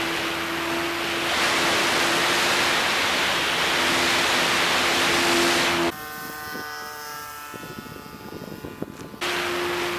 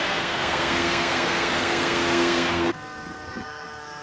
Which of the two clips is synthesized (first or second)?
second